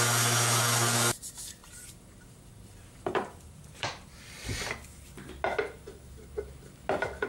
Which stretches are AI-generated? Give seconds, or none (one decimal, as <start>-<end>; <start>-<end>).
1.6-4.2